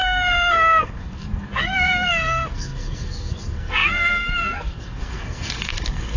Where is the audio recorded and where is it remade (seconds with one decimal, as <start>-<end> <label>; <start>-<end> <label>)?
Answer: 0.0-6.2 remade